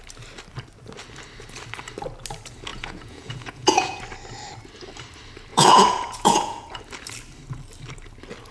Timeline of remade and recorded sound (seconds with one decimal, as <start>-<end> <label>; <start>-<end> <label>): 0.0-2.7 recorded; 2.7-4.0 remade; 4.0-5.5 recorded; 5.5-6.8 remade; 6.8-8.5 recorded